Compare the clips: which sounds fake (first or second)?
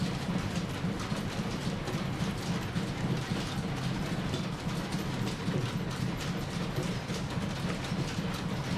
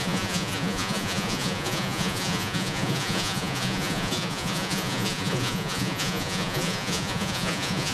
second